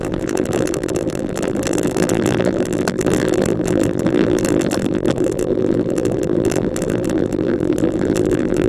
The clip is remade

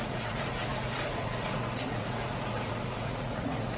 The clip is remade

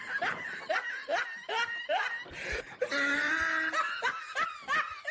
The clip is recorded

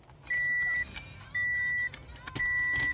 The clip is recorded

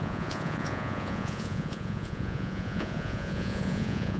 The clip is remade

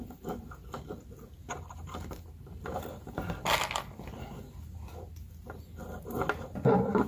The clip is recorded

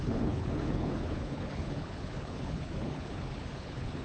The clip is remade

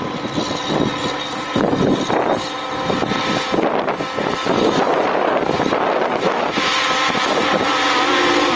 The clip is recorded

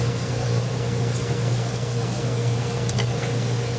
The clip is remade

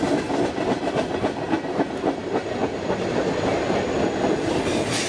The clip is recorded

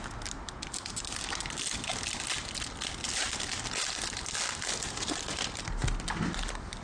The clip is recorded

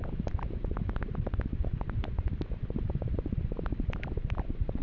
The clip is remade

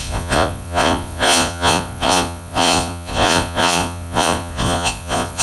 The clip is remade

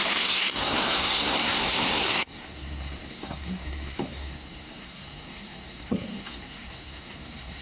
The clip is remade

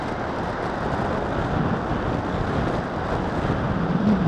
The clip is recorded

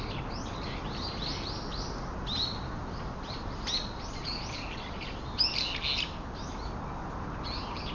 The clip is recorded